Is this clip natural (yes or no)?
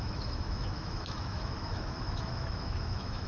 no